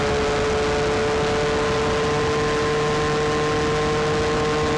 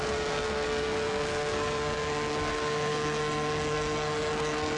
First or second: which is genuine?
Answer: first